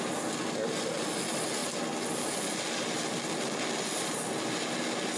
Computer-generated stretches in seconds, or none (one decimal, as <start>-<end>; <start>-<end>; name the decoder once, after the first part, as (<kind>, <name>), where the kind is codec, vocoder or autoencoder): none